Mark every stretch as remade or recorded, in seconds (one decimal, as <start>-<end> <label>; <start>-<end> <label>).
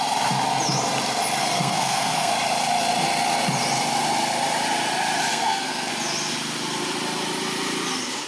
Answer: 0.0-1.4 recorded; 1.4-2.3 remade; 2.3-5.3 recorded; 5.3-5.9 remade; 5.9-8.3 recorded